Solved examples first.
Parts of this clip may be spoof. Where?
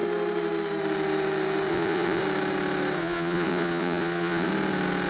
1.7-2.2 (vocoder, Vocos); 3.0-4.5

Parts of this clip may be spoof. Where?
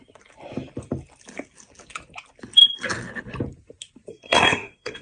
4.1-5.0 (codec, SNAC)